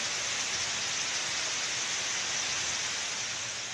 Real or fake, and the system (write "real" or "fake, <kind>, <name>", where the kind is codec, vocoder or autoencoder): real